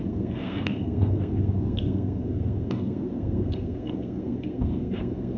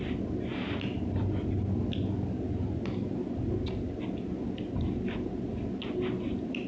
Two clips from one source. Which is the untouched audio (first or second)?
second